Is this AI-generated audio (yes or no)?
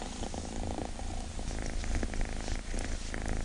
no